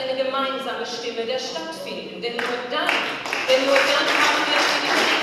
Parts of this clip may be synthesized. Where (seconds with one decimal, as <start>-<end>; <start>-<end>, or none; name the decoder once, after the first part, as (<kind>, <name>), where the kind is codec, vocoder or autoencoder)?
3.4-3.9 (autoencoder, DAC-VAE)